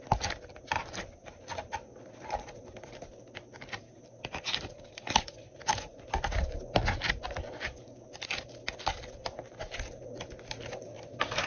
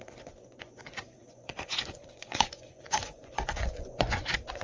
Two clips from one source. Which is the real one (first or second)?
first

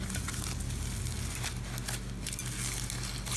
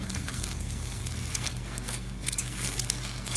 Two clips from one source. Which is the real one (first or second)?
first